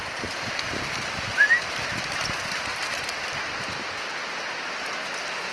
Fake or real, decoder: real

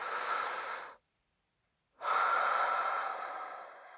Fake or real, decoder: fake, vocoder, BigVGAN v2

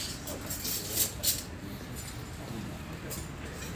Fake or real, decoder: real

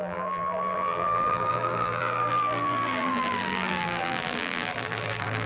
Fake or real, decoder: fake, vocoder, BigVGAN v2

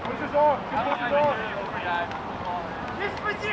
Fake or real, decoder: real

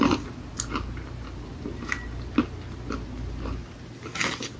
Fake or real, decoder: real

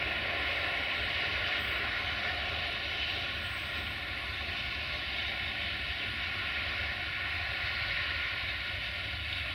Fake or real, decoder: real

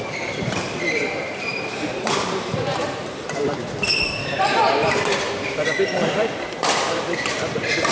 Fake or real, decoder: fake, vocoder, BigVGAN v2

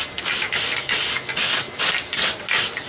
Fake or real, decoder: real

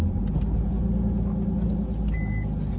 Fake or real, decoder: real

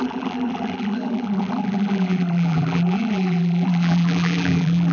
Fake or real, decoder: fake, vocoder, BigVGAN v2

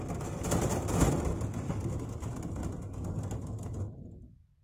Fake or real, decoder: real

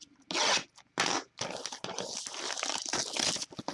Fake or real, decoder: real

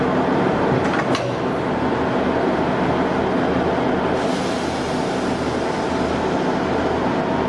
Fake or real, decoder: real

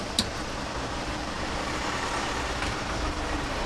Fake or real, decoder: real